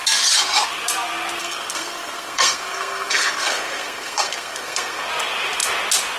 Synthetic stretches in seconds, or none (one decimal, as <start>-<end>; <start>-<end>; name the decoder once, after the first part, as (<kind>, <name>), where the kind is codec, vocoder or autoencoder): 1.4-5.1 (codec, SNAC)

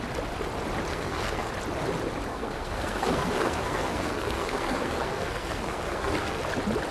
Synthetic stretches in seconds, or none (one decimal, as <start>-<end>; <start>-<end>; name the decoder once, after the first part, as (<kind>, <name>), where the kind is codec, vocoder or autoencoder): 0.9-1.5 (codec, SNAC); 2.3-6.4